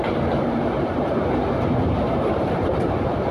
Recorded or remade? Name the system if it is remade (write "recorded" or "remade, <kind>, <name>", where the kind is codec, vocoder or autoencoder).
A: remade, vocoder, BigVGAN v2